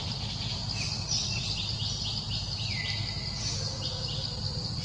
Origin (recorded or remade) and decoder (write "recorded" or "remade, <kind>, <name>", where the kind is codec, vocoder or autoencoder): recorded